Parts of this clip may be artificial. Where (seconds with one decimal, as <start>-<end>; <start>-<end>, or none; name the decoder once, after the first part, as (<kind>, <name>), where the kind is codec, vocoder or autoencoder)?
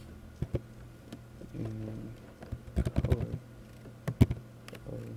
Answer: none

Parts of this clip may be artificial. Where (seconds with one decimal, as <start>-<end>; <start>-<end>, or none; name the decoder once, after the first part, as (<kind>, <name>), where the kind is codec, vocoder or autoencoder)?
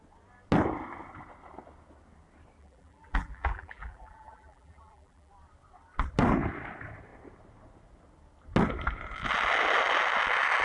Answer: 2.6-5.3 (vocoder, BigVGAN v2)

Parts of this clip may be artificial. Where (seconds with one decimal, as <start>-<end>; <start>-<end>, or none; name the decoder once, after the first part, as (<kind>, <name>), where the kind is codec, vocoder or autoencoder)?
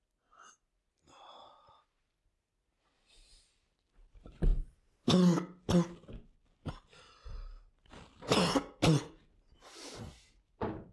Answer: none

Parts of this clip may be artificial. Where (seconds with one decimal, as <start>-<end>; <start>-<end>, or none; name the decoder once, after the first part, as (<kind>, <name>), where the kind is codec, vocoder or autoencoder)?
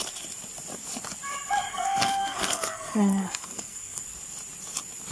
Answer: 1.7-4.0 (codec, SNAC)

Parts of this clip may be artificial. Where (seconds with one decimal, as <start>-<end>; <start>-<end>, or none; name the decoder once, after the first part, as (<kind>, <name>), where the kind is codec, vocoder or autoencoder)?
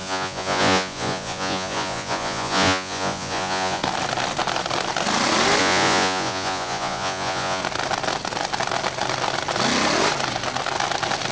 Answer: 0.0-3.8 (vocoder, Vocos); 5.6-7.6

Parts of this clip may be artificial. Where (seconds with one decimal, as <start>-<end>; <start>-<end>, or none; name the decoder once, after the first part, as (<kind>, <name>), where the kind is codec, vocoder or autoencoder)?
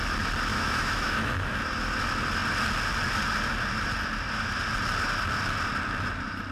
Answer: 0.5-1.6 (autoencoder, DAC-VAE)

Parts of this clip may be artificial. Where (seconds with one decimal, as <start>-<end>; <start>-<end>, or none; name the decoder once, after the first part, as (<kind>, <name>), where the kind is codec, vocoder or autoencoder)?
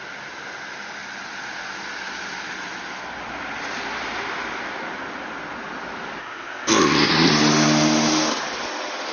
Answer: 6.2-7.3 (codec, ZipCodec)